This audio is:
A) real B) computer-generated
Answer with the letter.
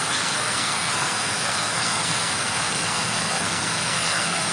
B